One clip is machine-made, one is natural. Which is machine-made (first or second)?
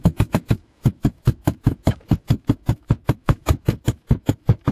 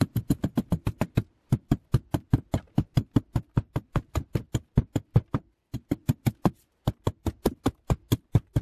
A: first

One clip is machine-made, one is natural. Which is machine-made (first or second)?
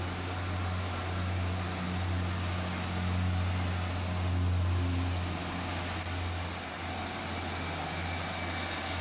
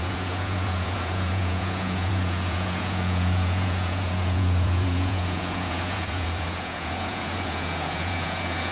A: second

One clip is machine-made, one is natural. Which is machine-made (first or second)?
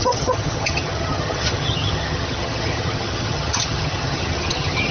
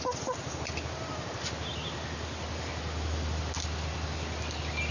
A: first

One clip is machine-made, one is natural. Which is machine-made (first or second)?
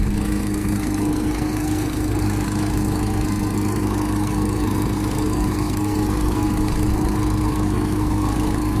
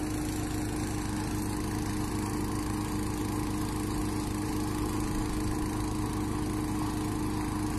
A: first